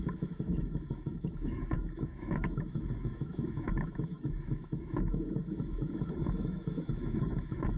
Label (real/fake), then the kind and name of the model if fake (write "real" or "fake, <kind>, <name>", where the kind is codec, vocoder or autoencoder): fake, autoencoder, DAC-VAE